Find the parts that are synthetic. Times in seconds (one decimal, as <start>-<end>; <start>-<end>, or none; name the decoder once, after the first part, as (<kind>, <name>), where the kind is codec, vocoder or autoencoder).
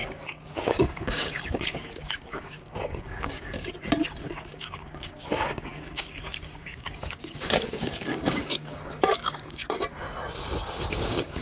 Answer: 0.0-3.7 (codec, DAC); 4.5-9.6; 10.9-11.4